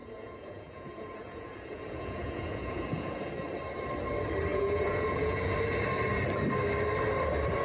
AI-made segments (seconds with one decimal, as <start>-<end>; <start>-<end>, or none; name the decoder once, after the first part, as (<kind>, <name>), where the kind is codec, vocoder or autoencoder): 0.0-3.3 (vocoder, Vocos); 4.5-5.4